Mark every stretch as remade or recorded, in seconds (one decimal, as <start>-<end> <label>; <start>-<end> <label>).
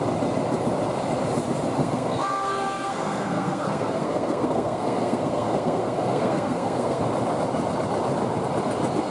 0.0-1.8 recorded; 1.8-7.0 remade; 7.0-9.1 recorded